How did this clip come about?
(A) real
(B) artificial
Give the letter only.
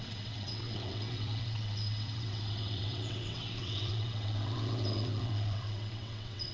B